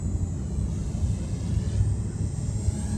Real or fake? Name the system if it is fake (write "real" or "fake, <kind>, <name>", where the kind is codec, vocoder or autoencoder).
real